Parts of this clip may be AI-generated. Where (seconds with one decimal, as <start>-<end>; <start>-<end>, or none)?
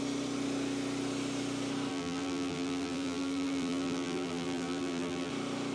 1.9-5.3